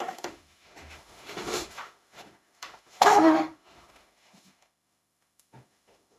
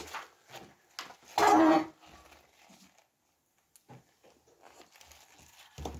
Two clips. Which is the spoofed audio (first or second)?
first